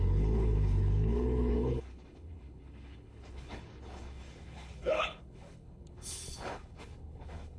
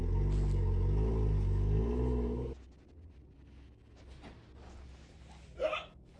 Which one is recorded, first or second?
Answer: second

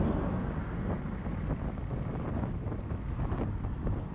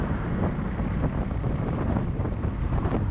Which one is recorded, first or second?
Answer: first